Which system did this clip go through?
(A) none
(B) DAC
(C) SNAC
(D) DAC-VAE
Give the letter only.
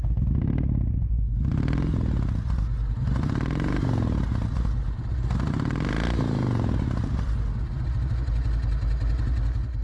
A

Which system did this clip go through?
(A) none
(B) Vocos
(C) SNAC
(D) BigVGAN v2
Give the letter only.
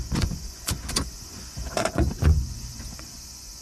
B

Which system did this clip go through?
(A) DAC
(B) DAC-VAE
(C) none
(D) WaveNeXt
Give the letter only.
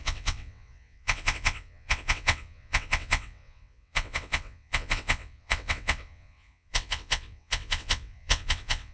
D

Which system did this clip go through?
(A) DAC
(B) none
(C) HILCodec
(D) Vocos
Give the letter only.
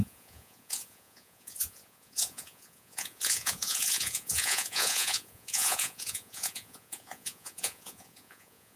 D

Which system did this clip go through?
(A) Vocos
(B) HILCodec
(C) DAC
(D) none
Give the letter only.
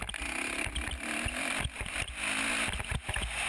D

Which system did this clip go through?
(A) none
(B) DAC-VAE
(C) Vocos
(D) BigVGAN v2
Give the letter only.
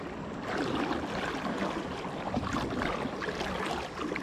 A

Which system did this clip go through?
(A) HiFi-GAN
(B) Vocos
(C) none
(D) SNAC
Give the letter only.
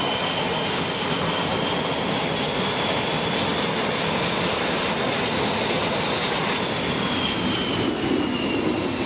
C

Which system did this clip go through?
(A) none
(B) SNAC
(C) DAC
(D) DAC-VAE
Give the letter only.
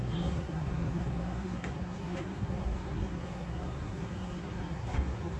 B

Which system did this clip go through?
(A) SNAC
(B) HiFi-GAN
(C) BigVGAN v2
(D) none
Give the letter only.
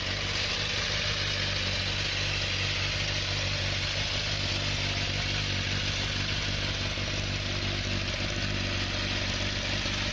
D